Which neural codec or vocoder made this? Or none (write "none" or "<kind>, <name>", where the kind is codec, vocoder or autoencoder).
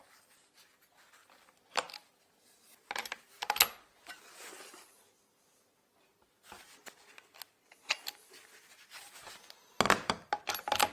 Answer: none